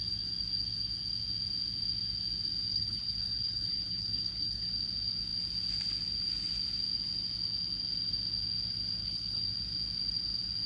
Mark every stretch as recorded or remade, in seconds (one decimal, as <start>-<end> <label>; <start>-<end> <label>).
0.0-2.7 recorded; 2.7-4.7 remade; 4.7-9.0 recorded; 9.0-9.5 remade; 9.5-10.7 recorded